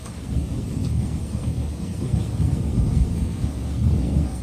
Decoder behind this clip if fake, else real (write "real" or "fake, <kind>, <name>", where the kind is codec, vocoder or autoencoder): fake, codec, SNAC